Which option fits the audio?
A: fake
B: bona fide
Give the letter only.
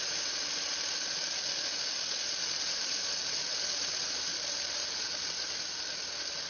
B